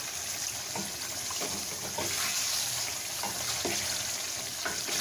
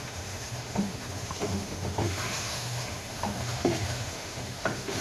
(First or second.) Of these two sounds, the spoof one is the second